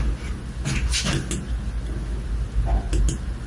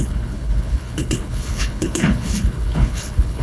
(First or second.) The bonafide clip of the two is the first